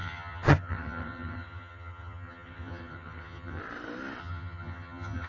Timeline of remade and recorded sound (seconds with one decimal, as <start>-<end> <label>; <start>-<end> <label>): 0.0-3.6 remade; 3.6-4.2 recorded; 4.2-5.3 remade